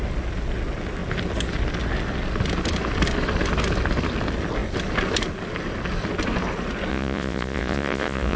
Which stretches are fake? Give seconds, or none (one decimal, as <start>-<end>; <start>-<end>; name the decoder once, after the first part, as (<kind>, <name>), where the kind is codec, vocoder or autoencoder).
6.9-8.4 (vocoder, Vocos)